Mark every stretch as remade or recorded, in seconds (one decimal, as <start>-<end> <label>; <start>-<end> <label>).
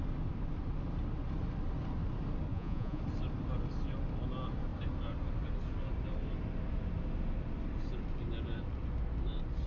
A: 0.0-2.5 recorded; 2.5-3.0 remade; 3.0-9.7 recorded